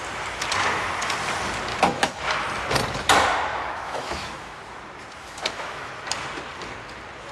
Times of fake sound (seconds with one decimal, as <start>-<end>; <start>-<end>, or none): 1.7-2.2; 3.5-4.6; 5.2-5.9